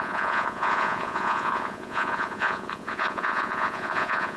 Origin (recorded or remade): remade